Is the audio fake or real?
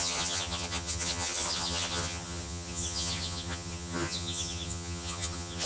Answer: fake